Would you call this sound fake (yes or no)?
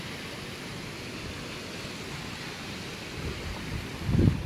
no